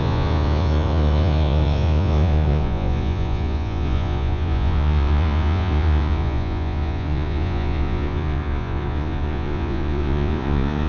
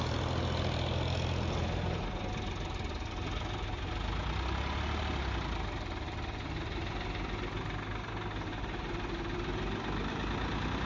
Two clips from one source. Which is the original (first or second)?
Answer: second